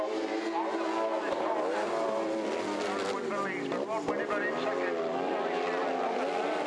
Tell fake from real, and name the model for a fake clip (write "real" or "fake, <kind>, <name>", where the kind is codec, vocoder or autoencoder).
real